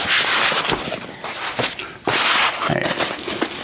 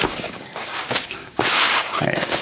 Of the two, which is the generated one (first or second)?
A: second